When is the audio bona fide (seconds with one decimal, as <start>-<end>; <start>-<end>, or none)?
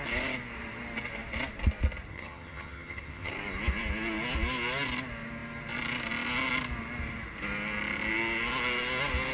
0.0-2.1; 3.3-9.3